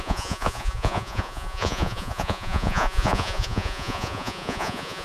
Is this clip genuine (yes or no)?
no